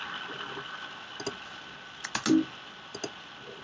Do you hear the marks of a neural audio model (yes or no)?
no